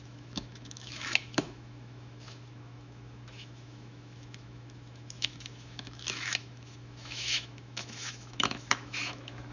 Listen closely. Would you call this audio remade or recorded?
remade